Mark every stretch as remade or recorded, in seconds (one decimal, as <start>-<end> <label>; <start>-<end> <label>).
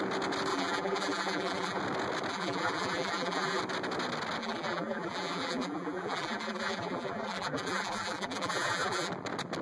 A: 0.0-0.5 recorded; 0.5-1.8 remade; 1.8-2.3 recorded; 2.3-3.6 remade; 3.6-4.4 recorded; 4.4-9.1 remade; 9.1-9.6 recorded